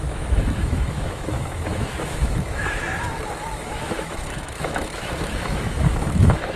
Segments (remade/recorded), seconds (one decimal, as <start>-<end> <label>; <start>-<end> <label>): 0.0-2.8 remade; 2.8-3.4 recorded; 3.4-6.6 remade